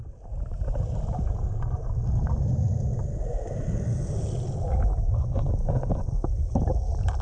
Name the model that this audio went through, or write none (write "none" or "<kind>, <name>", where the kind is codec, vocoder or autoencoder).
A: none